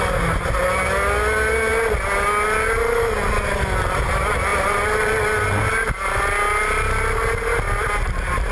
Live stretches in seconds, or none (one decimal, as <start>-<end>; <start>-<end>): 0.0-4.5; 5.2-8.5